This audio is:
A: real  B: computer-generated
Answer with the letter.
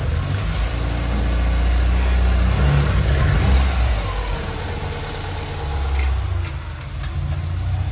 A